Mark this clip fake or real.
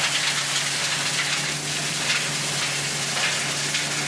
real